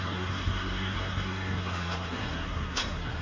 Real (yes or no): no